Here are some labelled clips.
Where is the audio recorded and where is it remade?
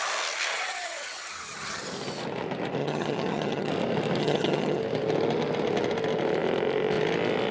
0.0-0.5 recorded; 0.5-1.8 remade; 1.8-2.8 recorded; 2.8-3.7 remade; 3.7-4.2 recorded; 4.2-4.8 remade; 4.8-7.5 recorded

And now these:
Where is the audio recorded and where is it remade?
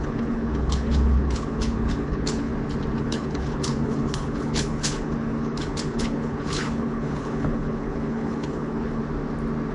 0.0-2.5 remade; 2.5-3.0 recorded; 3.0-9.0 remade; 9.0-9.7 recorded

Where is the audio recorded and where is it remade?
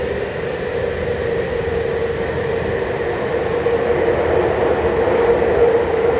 0.0-6.2 recorded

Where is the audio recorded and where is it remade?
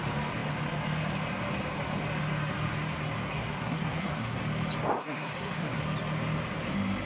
0.0-3.3 recorded; 3.3-4.4 remade; 4.4-5.0 recorded; 5.0-5.8 remade; 5.8-7.1 recorded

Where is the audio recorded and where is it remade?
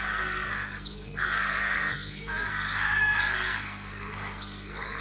0.0-5.0 remade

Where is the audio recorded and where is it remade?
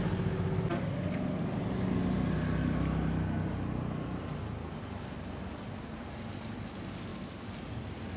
0.0-8.2 recorded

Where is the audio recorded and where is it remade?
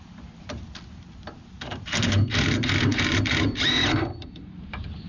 0.0-1.7 recorded; 1.7-5.1 remade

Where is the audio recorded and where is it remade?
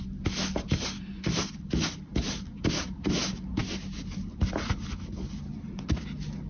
0.0-6.5 recorded